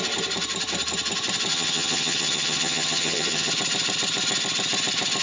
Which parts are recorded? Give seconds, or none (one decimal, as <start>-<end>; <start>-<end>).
0.0-1.5; 3.5-5.2